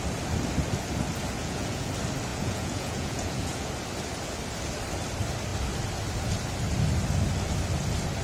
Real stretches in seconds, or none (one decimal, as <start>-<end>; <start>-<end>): 0.0-1.4; 1.9-2.3; 3.7-8.2